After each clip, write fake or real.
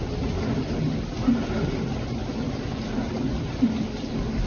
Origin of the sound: real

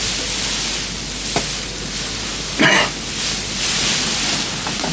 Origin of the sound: real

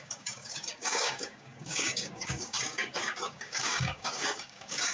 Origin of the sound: fake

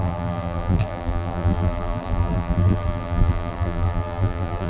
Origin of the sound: fake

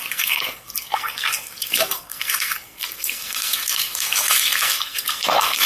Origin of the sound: fake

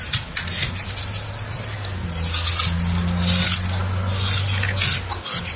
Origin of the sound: real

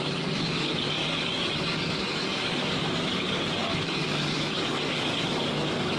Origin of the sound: fake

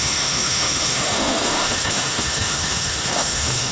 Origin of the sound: fake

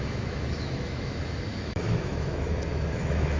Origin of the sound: fake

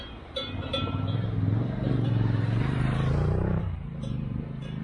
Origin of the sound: fake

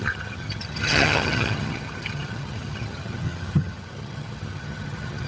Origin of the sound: fake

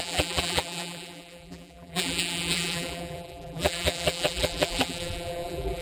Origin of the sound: fake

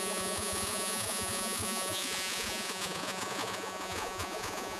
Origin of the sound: fake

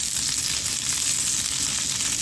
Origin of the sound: real